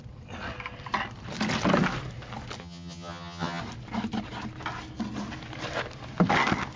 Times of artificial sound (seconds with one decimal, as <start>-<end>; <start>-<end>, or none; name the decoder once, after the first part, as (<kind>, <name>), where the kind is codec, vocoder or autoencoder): 2.6-3.6 (vocoder, HiFi-GAN)